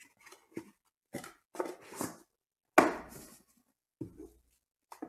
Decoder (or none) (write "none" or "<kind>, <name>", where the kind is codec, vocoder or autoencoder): none